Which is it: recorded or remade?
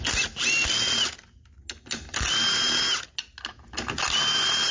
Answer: recorded